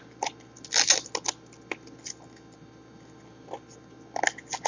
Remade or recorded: recorded